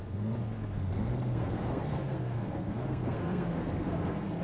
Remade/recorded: remade